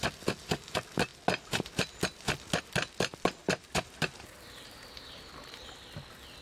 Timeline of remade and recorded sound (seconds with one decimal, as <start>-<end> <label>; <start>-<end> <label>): 0.0-3.4 recorded; 3.4-5.3 remade; 5.3-6.4 recorded